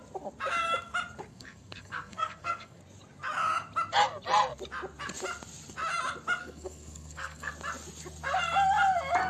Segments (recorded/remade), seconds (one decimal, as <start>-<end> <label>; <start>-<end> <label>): 0.0-1.3 recorded; 1.3-2.8 remade; 2.8-6.4 recorded; 6.4-7.5 remade; 7.5-9.3 recorded